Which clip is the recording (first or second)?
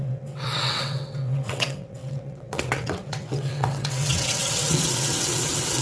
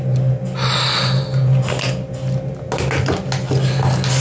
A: second